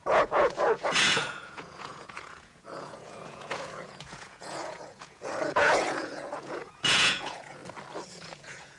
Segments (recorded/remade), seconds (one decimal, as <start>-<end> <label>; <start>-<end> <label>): 0.0-7.6 remade; 7.6-8.1 recorded; 8.1-8.8 remade